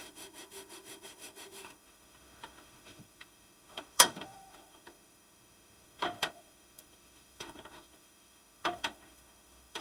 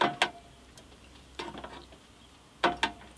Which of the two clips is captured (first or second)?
second